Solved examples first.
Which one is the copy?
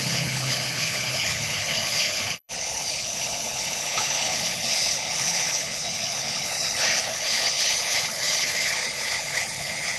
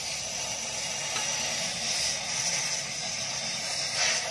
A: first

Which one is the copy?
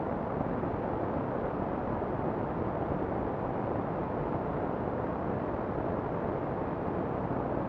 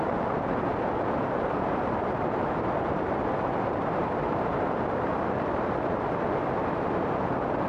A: second